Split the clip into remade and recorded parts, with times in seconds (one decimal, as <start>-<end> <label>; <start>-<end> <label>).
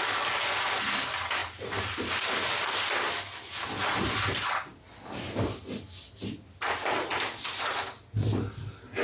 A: 0.0-9.0 recorded